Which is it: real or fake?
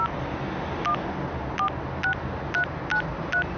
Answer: real